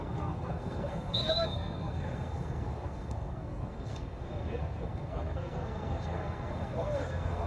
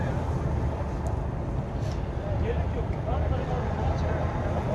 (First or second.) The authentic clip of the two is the second